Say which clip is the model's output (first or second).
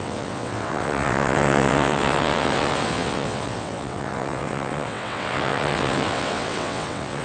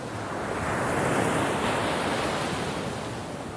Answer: first